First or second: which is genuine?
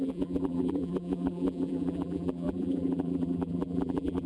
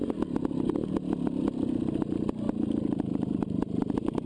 second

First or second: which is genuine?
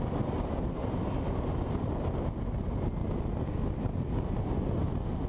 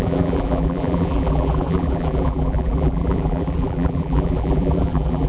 first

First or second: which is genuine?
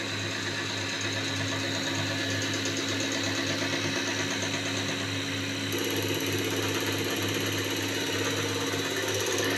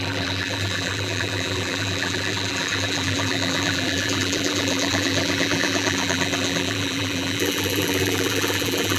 first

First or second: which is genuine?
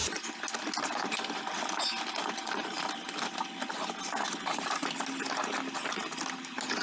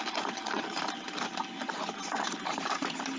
first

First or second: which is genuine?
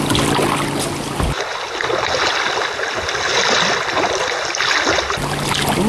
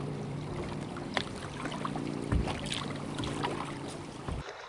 first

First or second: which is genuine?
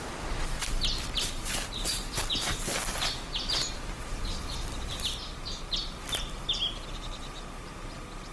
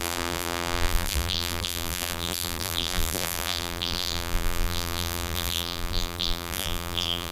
first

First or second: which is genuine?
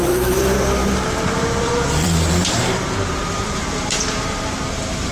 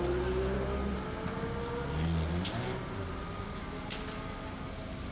second